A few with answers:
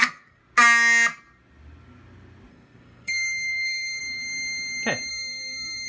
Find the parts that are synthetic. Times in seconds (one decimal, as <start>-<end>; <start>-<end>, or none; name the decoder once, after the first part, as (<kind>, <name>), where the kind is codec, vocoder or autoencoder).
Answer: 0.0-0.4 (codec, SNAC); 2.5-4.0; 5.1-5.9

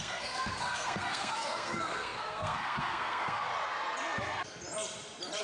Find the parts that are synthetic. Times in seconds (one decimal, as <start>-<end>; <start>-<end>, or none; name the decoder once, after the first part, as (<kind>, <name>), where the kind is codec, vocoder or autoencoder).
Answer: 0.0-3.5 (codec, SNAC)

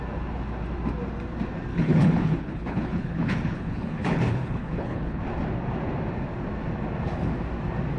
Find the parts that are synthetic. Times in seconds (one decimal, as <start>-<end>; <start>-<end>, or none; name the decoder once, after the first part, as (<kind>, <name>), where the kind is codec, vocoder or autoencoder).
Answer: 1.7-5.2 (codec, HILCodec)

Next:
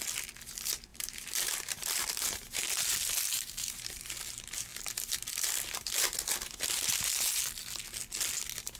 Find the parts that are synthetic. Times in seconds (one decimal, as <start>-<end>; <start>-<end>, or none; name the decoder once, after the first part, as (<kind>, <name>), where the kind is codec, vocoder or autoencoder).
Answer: 0.9-4.1 (vocoder, BigVGAN v2)

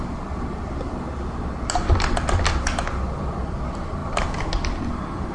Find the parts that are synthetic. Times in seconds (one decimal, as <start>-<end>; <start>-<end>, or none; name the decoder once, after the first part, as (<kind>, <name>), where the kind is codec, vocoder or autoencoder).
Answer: none